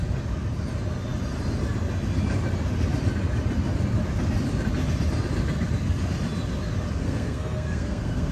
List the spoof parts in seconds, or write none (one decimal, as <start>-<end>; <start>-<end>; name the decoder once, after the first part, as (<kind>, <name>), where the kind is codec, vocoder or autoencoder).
7.0-8.3 (codec, SNAC)